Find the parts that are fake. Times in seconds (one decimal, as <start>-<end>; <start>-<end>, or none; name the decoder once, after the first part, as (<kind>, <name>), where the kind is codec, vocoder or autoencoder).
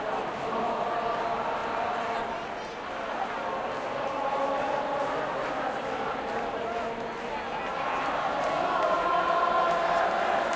none